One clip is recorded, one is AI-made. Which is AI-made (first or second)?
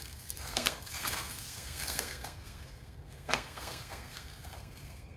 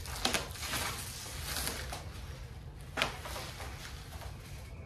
first